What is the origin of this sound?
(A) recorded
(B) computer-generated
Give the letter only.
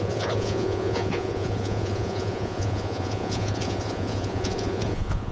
B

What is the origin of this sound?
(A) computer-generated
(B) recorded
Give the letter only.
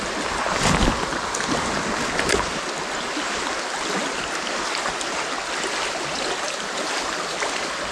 B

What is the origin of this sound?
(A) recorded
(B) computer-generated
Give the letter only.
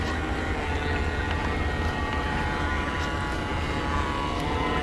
A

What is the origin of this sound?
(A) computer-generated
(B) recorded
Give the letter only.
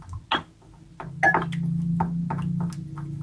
B